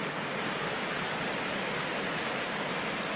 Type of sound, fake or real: real